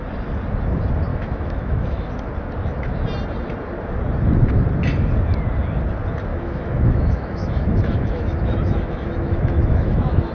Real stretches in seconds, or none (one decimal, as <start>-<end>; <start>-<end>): 0.0-1.1; 2.1-6.3